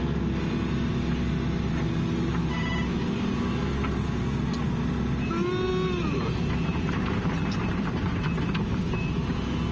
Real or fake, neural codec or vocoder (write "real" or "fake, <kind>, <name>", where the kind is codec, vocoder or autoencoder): real